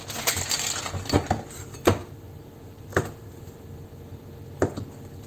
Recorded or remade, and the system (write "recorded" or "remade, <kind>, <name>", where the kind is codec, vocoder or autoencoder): recorded